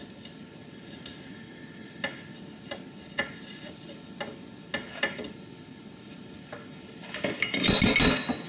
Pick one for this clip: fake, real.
real